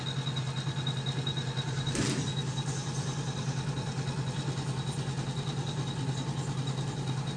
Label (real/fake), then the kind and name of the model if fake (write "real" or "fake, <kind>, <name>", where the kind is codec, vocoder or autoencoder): real